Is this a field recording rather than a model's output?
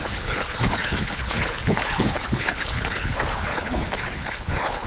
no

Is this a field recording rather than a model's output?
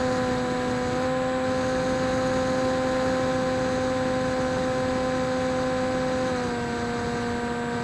yes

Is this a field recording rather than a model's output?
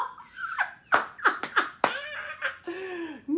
yes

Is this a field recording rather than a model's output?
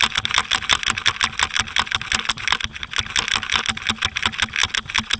yes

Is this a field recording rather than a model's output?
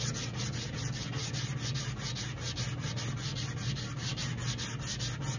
yes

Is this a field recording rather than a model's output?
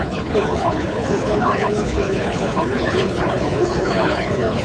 no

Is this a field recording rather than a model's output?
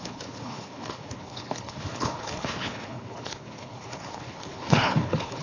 no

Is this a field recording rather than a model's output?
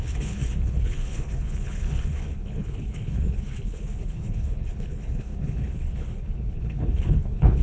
no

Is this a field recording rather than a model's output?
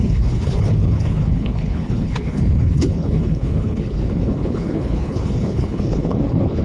no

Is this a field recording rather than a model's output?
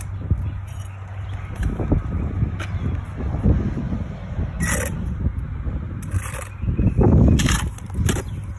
yes